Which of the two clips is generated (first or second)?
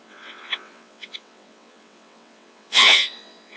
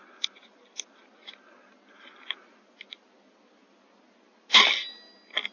first